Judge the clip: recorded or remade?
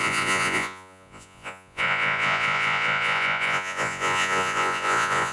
remade